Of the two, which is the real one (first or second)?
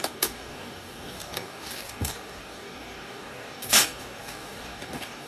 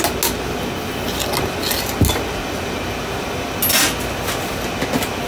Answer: second